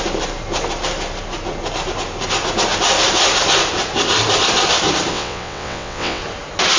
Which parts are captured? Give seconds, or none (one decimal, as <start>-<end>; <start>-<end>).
0.0-5.1; 6.2-6.8